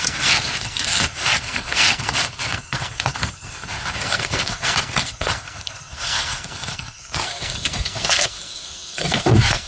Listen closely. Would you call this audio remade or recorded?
remade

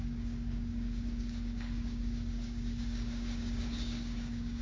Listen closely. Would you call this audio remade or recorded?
remade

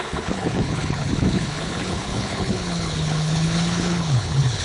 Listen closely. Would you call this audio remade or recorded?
remade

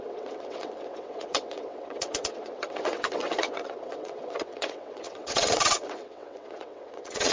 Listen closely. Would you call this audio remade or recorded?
remade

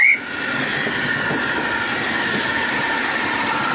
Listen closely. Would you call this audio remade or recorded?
recorded